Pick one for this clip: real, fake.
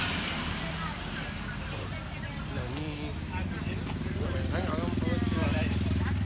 real